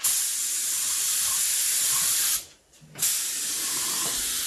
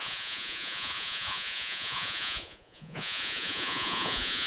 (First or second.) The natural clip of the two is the first